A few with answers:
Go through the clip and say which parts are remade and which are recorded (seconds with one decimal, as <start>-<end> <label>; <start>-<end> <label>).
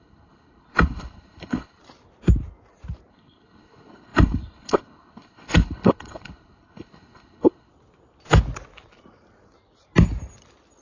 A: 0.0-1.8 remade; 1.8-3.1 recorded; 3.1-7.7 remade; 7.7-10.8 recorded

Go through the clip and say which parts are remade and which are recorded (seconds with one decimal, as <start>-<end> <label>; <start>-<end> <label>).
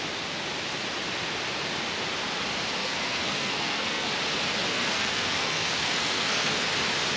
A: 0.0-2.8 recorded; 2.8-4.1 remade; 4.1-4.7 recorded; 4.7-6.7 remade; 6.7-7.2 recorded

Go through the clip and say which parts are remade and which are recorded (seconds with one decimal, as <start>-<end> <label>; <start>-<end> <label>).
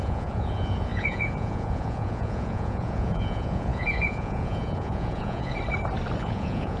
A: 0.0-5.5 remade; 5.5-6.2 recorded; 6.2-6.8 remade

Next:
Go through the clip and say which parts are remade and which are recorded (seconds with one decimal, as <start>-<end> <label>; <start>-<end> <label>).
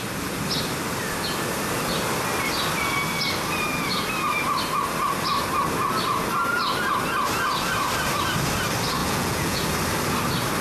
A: 0.0-9.0 recorded; 9.0-9.6 remade; 9.6-10.6 recorded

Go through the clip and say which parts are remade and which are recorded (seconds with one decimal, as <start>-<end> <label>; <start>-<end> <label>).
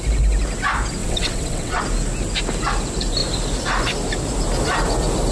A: 0.0-1.0 recorded; 1.0-1.8 remade; 1.8-5.3 recorded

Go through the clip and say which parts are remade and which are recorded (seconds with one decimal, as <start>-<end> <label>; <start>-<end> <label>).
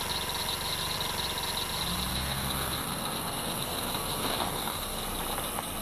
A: 0.0-2.1 recorded; 2.1-5.0 remade; 5.0-5.8 recorded